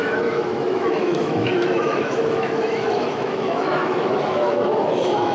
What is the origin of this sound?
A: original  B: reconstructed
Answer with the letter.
B